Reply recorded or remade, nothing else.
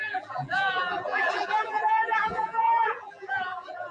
remade